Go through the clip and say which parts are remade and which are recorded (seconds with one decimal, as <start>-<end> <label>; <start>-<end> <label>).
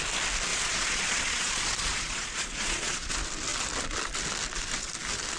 0.0-0.5 recorded; 0.5-3.1 remade; 3.1-5.4 recorded